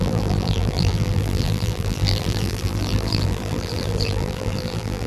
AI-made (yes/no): yes